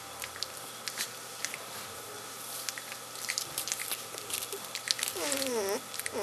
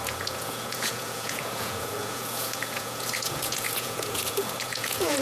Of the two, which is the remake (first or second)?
second